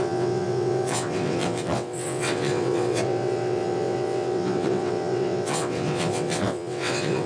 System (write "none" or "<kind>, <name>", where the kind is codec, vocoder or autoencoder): vocoder, WaveNeXt